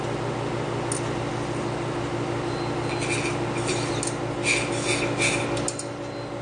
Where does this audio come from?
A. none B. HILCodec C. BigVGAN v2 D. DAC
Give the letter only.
A